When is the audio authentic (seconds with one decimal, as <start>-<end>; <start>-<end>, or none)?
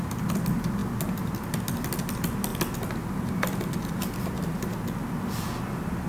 0.0-6.1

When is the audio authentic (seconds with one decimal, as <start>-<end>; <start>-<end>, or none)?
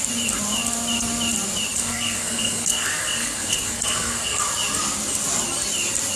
0.0-1.8; 4.4-6.2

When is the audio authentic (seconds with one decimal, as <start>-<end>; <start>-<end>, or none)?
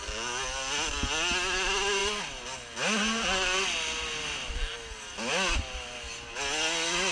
0.0-7.1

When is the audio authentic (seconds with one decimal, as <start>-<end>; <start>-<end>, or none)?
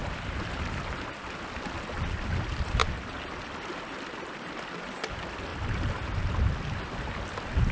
0.0-7.7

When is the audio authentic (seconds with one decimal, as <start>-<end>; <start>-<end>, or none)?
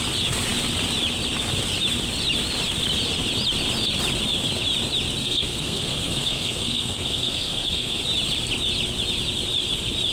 0.0-5.2; 8.0-10.1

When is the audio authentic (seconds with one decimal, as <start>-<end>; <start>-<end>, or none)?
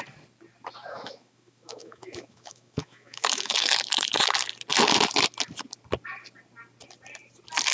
0.0-0.9; 3.7-7.7